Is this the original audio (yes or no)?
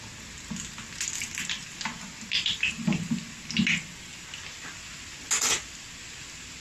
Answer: yes